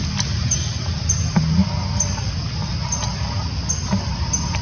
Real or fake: real